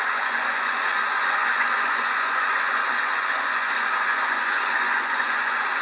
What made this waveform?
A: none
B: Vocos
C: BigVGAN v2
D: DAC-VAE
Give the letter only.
B